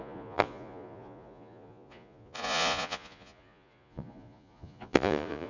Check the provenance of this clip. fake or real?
fake